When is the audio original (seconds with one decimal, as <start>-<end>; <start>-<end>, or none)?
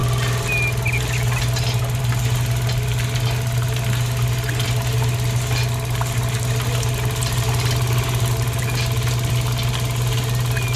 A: 0.0-10.8